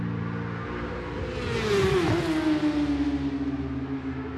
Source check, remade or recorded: recorded